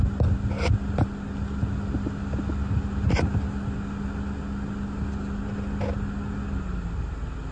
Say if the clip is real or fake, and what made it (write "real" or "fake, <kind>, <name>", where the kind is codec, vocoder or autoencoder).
real